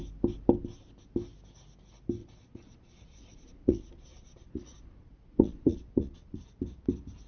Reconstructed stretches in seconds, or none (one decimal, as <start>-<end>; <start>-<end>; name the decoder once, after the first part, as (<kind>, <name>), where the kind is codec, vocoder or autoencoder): 2.2-6.4 (vocoder, Vocos)